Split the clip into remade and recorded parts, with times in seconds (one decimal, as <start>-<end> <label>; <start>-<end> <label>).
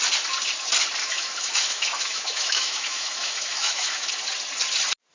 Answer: 0.0-1.0 recorded; 1.0-4.1 remade; 4.1-5.1 recorded